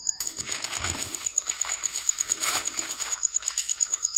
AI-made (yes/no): yes